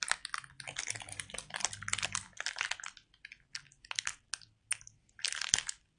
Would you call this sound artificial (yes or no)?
no